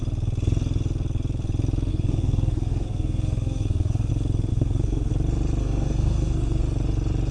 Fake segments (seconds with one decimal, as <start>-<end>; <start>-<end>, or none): 1.9-4.1; 4.5-5.1; 5.6-6.6